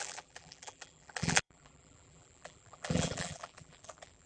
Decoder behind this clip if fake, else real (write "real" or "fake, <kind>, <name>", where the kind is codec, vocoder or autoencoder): fake, vocoder, BigVGAN v2